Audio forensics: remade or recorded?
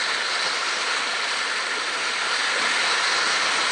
recorded